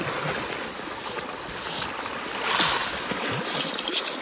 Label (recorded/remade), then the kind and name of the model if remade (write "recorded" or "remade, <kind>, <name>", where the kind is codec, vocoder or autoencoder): recorded